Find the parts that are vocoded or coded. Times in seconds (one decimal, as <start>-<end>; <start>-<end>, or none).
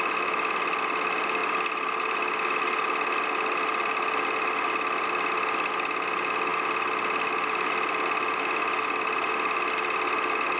none